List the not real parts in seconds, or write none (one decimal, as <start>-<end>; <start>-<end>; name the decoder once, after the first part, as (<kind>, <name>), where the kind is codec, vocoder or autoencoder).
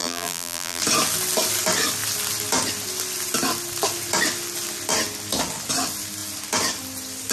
0.0-0.8 (vocoder, BigVGAN v2)